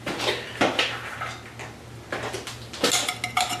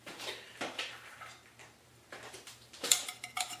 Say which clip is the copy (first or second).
second